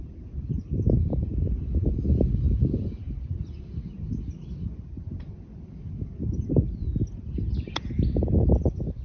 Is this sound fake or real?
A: real